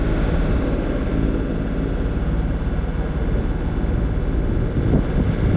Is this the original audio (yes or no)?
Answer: yes